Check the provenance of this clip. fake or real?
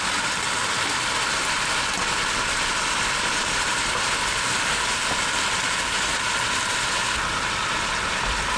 real